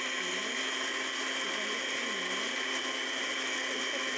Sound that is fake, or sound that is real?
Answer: real